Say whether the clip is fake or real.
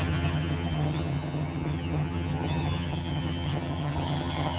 fake